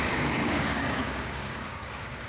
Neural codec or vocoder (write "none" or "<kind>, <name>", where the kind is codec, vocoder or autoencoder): codec, DAC